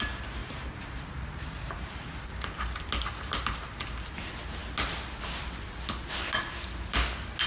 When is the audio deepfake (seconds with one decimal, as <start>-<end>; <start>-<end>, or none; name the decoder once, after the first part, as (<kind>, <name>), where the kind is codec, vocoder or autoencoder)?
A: 0.4-2.0 (vocoder, BigVGAN v2)